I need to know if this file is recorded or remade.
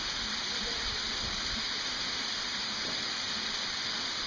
recorded